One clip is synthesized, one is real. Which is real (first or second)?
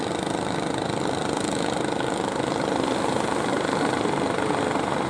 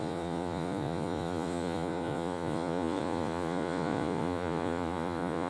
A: first